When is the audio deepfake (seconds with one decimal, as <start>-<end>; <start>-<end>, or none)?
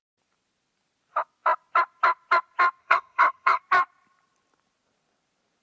2.8-3.6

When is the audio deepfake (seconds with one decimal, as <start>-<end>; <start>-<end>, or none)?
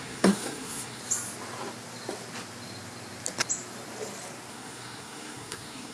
0.0-1.0; 4.5-5.9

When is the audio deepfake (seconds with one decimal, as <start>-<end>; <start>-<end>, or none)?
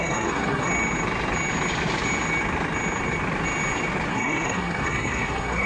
0.0-0.7; 4.1-5.7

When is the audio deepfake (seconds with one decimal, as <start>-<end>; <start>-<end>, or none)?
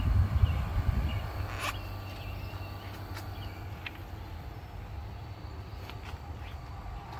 none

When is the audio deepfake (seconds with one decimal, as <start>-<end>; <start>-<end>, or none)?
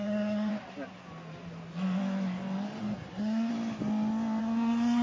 0.0-0.5; 2.8-3.5; 4.4-5.0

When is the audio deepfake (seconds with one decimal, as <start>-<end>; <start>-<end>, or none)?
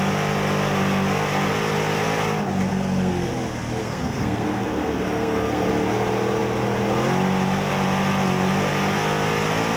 2.7-3.3; 3.8-5.7